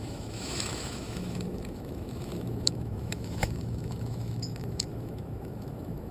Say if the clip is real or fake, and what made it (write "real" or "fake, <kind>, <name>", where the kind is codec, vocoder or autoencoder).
fake, autoencoder, DAC-VAE